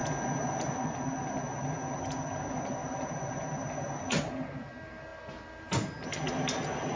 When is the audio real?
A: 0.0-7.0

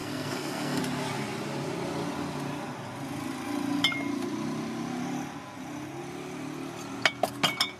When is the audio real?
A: 0.8-7.8